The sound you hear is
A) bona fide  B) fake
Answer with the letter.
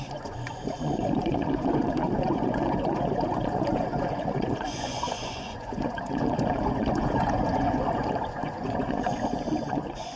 B